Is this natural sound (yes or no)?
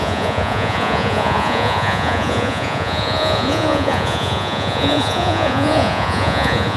no